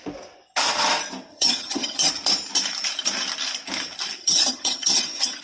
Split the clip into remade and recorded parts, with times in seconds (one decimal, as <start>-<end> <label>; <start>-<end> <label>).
0.0-1.3 recorded; 1.3-2.1 remade; 2.1-4.2 recorded; 4.2-5.4 remade